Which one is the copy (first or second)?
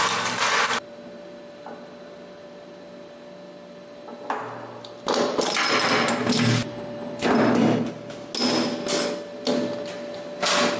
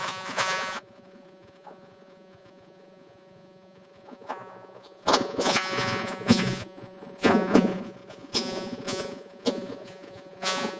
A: second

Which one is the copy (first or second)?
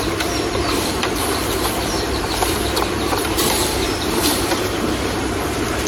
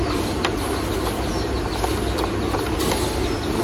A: first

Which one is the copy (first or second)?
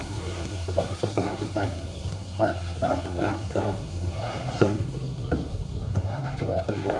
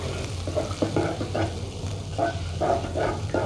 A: first